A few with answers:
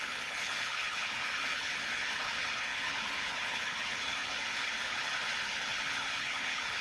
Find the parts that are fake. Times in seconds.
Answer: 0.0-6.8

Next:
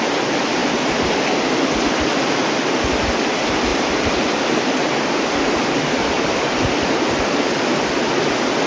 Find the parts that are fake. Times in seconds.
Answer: 0.6-1.9; 3.7-7.5

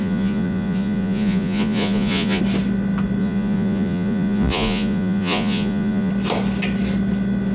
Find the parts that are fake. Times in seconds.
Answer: 0.0-2.4; 3.2-6.1

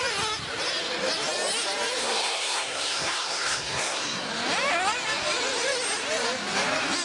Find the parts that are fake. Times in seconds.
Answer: 2.0-4.3